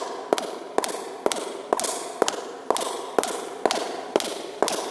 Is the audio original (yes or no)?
yes